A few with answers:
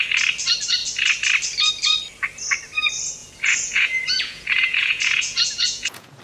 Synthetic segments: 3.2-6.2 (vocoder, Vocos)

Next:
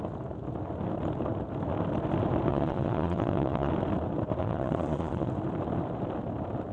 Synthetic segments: 2.5-3.7 (vocoder, Vocos); 4.4-5.3

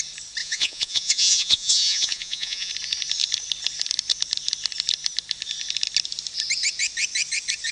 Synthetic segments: 0.4-2.7 (vocoder, Vocos)

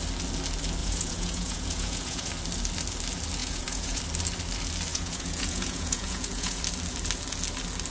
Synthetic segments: 0.8-2.3 (vocoder, Vocos); 3.4-4.0; 4.9-6.6

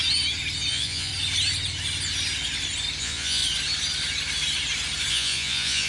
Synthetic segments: 0.7-1.1 (vocoder, Vocos); 3.0-3.4; 5.1-5.9